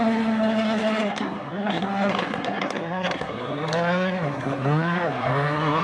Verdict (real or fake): fake